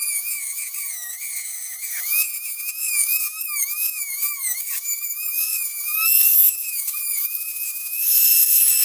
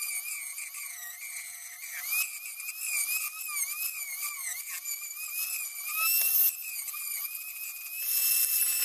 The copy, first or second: first